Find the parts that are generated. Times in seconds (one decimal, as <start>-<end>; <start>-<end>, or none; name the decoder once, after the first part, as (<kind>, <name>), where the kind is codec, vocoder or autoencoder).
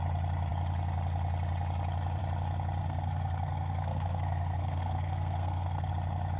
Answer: 2.8-5.9 (codec, SNAC)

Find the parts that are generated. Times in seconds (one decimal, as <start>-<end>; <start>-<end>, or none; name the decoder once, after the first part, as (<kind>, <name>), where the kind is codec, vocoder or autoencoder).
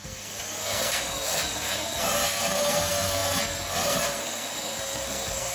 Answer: 0.0-5.5 (codec, SNAC)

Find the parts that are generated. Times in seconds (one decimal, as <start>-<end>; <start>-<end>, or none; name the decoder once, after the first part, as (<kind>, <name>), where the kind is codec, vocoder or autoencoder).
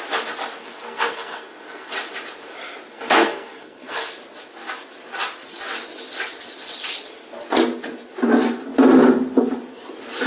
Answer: 0.6-1.9 (codec, SNAC); 2.9-4.1